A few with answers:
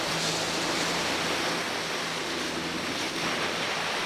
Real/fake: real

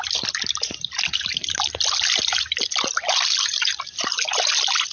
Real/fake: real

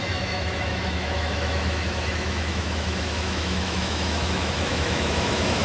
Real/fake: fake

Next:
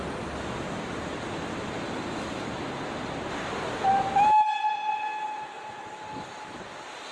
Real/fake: real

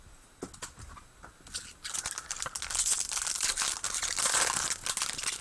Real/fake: real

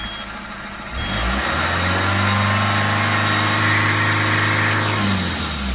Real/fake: real